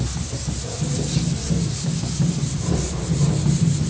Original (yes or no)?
no